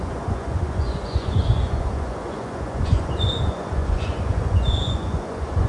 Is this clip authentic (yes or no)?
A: no